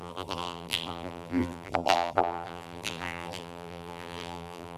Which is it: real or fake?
fake